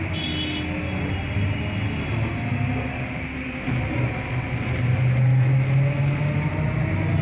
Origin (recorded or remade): recorded